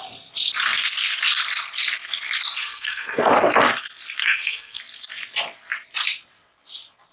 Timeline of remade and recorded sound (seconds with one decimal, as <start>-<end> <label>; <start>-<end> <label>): 0.0-2.6 recorded; 2.6-3.3 remade; 3.3-4.2 recorded; 4.2-4.8 remade; 4.8-7.1 recorded